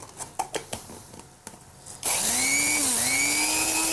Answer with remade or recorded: recorded